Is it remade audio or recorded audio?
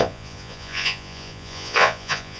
remade